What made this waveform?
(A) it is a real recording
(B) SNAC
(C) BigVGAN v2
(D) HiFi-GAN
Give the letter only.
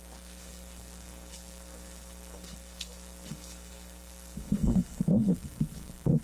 B